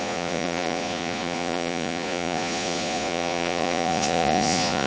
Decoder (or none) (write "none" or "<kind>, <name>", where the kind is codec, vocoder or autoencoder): vocoder, Vocos